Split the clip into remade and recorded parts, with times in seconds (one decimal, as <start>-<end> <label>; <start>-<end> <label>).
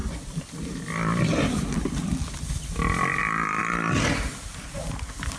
0.0-5.4 recorded